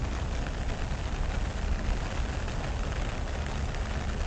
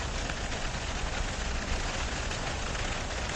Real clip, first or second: first